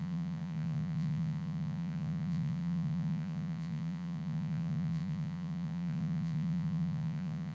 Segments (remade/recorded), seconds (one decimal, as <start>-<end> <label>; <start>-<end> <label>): 0.0-7.5 remade